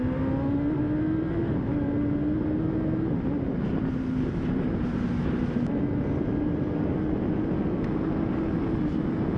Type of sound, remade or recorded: recorded